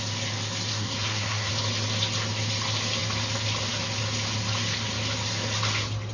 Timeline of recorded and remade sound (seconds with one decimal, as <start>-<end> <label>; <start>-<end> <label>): 0.0-0.7 recorded; 0.7-1.5 remade; 1.5-6.1 recorded